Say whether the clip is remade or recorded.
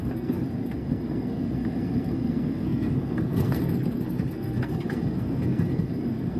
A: remade